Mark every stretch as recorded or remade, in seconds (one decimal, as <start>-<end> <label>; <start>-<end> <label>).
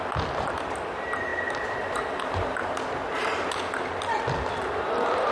0.0-1.3 recorded; 1.3-2.8 remade; 2.8-5.3 recorded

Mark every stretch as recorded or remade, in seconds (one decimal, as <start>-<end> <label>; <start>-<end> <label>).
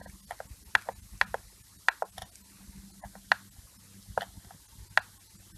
0.0-5.6 recorded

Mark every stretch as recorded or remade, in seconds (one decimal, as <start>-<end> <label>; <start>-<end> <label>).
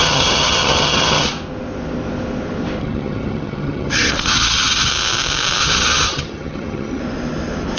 0.0-1.3 remade; 1.3-2.8 recorded; 2.8-4.9 remade; 4.9-5.6 recorded; 5.6-7.0 remade; 7.0-7.8 recorded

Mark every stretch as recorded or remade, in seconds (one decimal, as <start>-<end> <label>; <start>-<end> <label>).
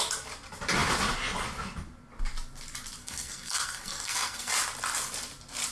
0.0-3.0 recorded; 3.0-4.5 remade; 4.5-5.7 recorded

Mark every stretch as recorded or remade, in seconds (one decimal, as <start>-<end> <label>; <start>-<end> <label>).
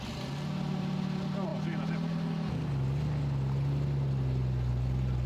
0.0-5.3 recorded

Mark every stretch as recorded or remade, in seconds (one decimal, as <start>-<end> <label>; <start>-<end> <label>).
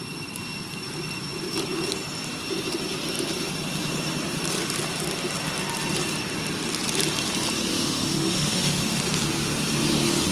0.0-7.7 recorded; 7.7-9.0 remade; 9.0-10.3 recorded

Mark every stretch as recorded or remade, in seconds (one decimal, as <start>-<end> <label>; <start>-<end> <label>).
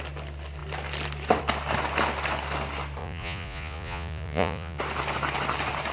0.0-3.0 recorded; 3.0-4.8 remade; 4.8-5.9 recorded